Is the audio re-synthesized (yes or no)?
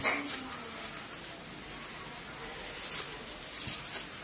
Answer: no